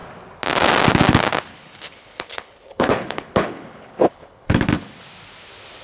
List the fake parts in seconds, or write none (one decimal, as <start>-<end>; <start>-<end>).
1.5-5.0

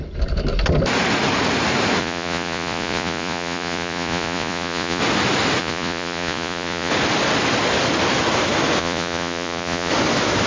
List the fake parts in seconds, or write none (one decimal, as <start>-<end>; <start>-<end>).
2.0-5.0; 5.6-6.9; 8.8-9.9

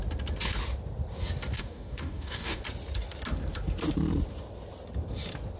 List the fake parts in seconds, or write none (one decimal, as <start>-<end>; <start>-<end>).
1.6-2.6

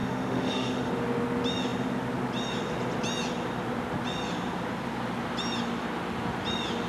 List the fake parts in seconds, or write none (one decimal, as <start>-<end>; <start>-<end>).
0.0-0.9

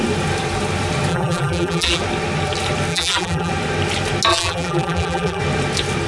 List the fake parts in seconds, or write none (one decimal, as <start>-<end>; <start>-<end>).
1.1-2.0; 2.9-3.5; 4.3-5.4

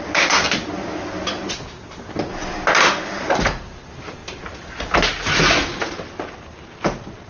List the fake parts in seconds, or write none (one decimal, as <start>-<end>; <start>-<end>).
none

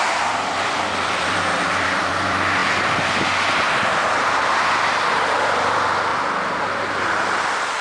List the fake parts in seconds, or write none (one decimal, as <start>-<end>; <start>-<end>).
0.0-2.6; 5.1-6.1; 7.0-7.8

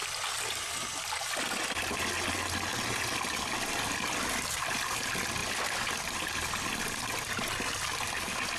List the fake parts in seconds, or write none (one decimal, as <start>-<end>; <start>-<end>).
none